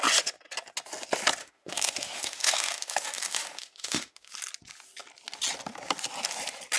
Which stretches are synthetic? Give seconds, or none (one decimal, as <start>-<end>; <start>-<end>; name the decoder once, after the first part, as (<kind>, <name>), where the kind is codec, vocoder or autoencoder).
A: 1.4-4.3 (autoencoder, DAC-VAE)